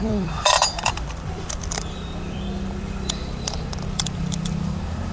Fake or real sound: fake